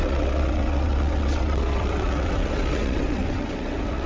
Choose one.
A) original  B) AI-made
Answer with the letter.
B